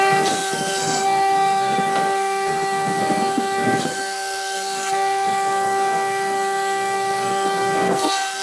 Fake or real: fake